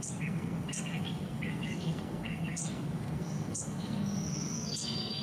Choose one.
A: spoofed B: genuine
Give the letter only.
A